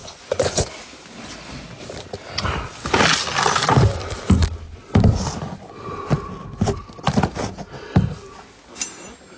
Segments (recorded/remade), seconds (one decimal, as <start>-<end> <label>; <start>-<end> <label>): 0.0-0.7 remade; 0.7-9.4 recorded